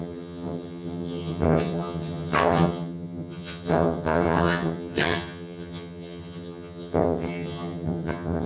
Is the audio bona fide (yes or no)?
no